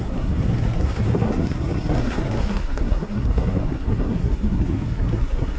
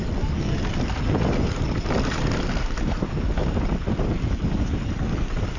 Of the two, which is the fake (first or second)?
first